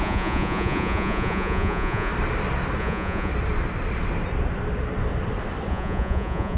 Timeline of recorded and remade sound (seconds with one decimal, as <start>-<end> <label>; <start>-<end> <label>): 0.0-2.1 remade; 2.1-2.8 recorded; 2.8-3.3 remade; 3.3-5.7 recorded; 5.7-6.6 remade